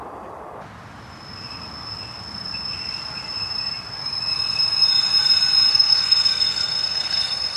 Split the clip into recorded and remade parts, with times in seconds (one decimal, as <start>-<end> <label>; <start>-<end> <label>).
0.0-5.7 recorded; 5.7-7.6 remade